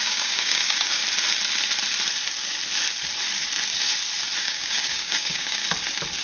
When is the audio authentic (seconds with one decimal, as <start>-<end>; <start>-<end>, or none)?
1.0-4.4; 5.6-6.2

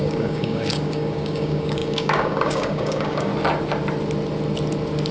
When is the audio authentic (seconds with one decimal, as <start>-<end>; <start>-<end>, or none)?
3.3-5.1

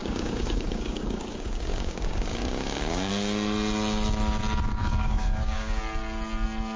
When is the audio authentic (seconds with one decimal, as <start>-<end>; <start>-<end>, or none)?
3.1-4.8; 5.8-6.8

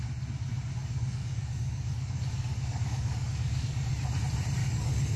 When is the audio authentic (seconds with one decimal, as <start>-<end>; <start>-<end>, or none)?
0.0-0.8; 3.9-4.6